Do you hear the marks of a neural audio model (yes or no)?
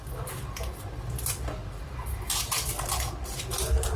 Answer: no